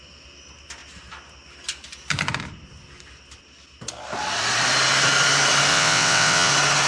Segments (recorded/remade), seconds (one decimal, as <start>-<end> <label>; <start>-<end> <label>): 0.0-5.7 recorded; 5.7-6.5 remade; 6.5-6.9 recorded